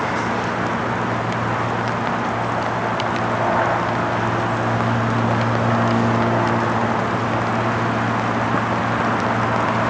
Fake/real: real